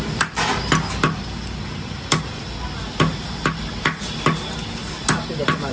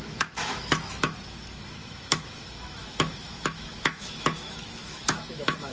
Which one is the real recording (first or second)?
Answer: first